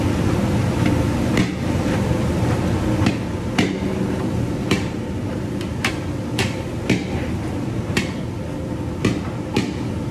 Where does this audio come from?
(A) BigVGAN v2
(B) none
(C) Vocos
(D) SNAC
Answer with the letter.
B